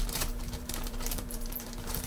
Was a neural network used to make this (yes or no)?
yes